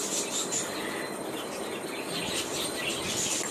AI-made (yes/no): no